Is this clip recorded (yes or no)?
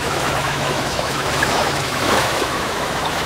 no